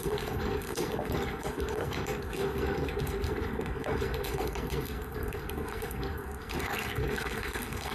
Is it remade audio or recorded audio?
remade